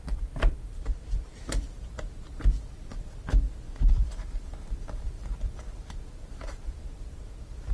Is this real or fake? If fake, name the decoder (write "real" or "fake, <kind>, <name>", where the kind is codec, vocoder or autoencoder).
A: fake, vocoder, BigVGAN v2